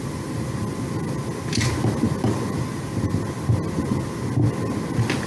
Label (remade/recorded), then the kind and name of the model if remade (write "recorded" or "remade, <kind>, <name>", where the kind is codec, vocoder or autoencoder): recorded